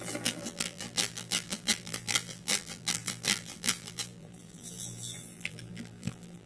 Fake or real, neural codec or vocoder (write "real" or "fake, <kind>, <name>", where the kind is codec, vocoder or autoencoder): fake, vocoder, BigVGAN v2